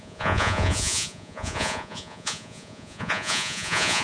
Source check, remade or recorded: remade